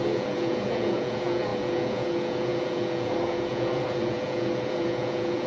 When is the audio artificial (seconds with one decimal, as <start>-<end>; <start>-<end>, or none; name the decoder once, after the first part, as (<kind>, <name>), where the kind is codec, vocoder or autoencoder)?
0.0-5.5 (vocoder, Vocos)